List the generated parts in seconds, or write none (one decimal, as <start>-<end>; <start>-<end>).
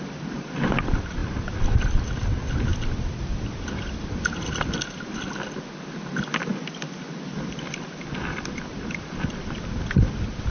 none